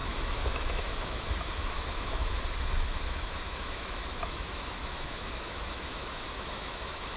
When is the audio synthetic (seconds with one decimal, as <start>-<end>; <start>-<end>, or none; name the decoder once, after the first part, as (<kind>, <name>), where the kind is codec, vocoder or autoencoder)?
0.0-2.4 (autoencoder, DAC-VAE); 2.9-7.2

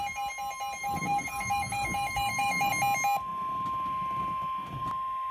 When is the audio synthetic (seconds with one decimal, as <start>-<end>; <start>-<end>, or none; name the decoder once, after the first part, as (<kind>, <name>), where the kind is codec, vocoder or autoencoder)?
0.8-2.7 (autoencoder, DAC-VAE)

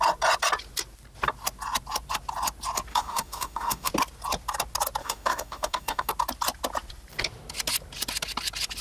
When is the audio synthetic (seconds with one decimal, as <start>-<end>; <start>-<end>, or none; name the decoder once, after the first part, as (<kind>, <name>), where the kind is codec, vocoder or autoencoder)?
2.9-3.9 (autoencoder, DAC-VAE); 5.0-6.1